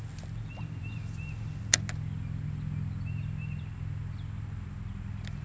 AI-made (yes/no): no